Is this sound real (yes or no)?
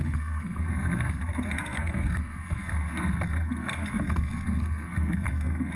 no